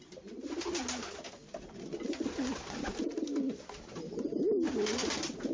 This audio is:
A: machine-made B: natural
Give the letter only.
B